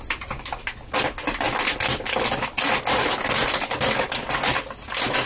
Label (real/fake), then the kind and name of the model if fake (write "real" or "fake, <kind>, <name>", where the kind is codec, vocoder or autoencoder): real